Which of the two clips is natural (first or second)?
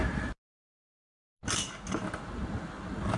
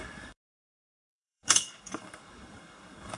first